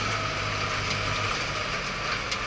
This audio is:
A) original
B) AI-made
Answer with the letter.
A